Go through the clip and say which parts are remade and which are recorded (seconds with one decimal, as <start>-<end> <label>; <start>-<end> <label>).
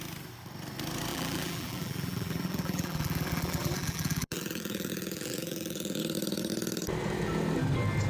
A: 0.0-1.1 recorded; 1.1-6.0 remade; 6.0-8.1 recorded